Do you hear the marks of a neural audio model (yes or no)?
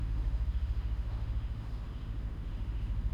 yes